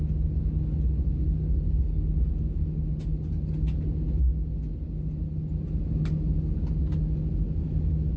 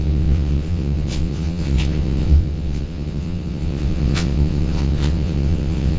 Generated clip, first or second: second